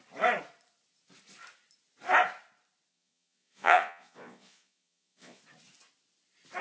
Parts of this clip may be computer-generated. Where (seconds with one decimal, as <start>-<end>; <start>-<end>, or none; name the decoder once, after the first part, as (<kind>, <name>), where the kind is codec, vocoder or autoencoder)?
2.9-5.4 (vocoder, Vocos)